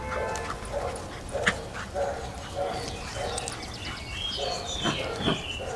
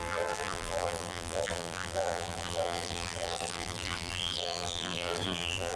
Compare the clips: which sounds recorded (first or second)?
first